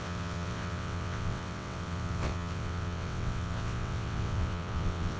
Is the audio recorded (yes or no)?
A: no